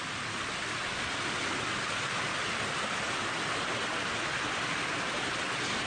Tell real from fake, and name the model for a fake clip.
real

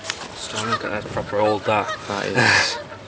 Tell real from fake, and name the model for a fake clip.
real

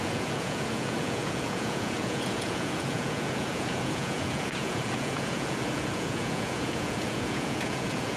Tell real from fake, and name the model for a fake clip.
fake, vocoder, Vocos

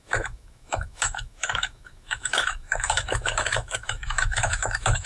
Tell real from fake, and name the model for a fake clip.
fake, autoencoder, DAC-VAE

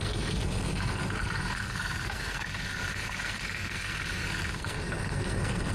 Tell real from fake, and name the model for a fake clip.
fake, codec, SNAC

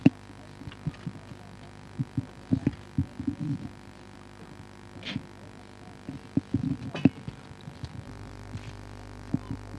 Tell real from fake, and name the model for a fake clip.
real